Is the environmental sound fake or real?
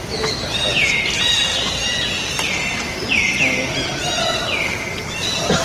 real